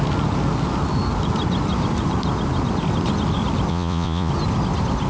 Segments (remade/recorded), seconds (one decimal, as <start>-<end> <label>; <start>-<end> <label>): 0.0-3.7 recorded; 3.7-4.3 remade; 4.3-5.1 recorded